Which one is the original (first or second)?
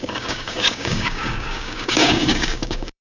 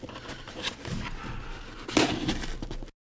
second